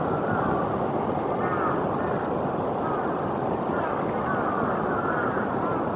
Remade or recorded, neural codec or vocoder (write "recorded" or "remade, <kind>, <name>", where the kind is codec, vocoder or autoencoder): recorded